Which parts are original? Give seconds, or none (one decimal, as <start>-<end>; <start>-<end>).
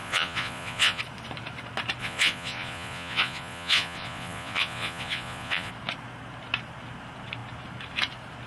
1.0-2.0; 5.7-8.5